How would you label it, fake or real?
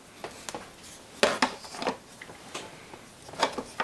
real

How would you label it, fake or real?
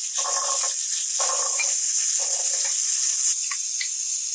real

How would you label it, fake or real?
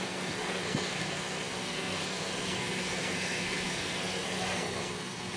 fake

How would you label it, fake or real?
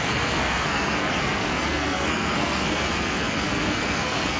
fake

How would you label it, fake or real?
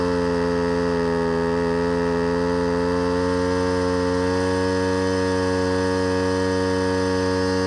real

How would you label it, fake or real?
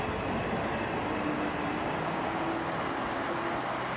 real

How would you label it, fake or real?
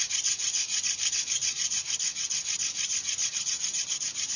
real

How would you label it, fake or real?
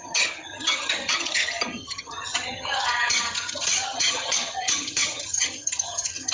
fake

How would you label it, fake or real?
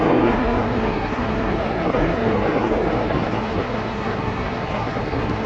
fake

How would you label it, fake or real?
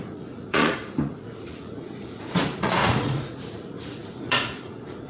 fake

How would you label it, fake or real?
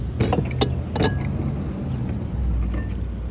real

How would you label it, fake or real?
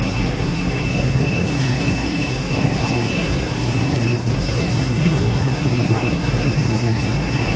fake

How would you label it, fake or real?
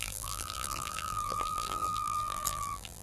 fake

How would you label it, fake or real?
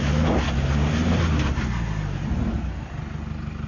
real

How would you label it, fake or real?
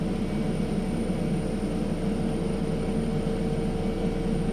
real